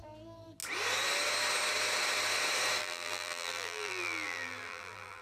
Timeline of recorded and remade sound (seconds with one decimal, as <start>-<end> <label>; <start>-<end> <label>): 0.0-2.8 recorded; 2.8-5.2 remade